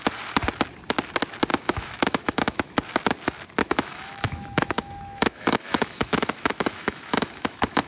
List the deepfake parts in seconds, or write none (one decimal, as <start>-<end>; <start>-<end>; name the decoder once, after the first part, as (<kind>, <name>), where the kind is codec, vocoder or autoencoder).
1.5-2.7 (autoencoder, DAC-VAE); 3.6-7.9